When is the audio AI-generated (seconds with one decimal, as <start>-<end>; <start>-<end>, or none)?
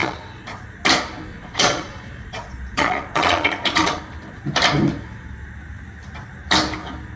0.0-0.6; 1.3-4.0